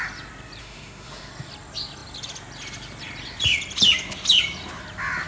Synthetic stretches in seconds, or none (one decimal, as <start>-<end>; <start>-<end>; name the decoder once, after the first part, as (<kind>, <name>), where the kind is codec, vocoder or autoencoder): 0.6-1.3 (autoencoder, DAC-VAE)